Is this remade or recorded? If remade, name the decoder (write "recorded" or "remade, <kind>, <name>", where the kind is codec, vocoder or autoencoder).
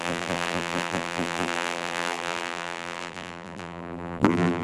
remade, vocoder, BigVGAN v2